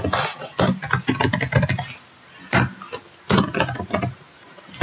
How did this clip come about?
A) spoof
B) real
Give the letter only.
B